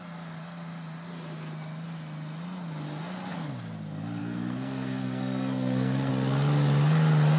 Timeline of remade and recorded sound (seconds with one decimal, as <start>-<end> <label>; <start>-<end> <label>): 0.0-4.2 recorded; 4.2-6.1 remade; 6.1-7.4 recorded